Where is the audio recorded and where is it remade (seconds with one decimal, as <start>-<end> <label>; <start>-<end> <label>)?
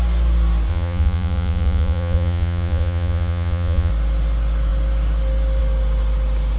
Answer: 0.0-0.7 recorded; 0.7-3.9 remade; 3.9-6.6 recorded